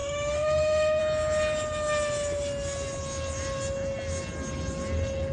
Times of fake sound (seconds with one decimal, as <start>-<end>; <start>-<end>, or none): 0.0-1.0